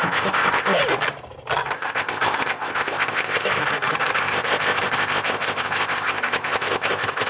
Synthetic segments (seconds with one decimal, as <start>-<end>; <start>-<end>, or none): 0.0-0.8; 1.7-3.6; 4.2-7.3